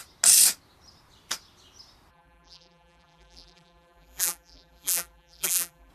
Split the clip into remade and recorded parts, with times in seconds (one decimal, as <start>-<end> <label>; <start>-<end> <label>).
0.0-2.1 recorded; 2.1-5.9 remade